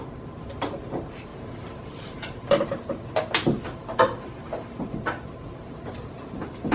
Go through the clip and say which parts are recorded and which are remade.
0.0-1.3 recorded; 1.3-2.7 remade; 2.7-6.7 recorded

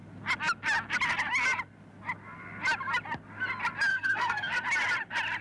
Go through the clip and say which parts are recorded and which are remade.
0.0-3.9 recorded; 3.9-4.5 remade; 4.5-5.4 recorded

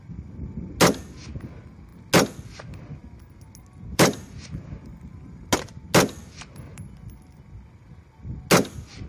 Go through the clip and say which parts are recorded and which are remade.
0.0-3.9 recorded; 3.9-5.5 remade; 5.5-9.1 recorded